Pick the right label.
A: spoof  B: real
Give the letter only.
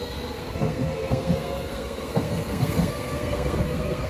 A